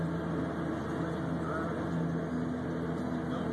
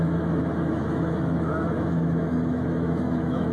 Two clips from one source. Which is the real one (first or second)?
first